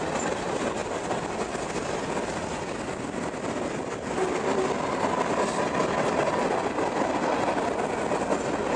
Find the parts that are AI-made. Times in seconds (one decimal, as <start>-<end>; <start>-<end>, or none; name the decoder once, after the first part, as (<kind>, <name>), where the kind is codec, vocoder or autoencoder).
none